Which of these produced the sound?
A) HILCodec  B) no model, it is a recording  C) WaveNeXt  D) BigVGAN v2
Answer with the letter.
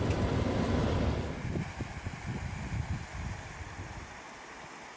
B